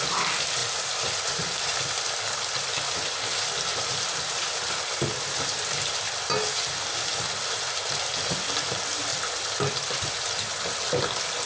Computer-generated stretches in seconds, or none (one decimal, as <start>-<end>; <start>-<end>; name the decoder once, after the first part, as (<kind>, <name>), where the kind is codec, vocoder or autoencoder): 0.6-2.1 (vocoder, BigVGAN v2)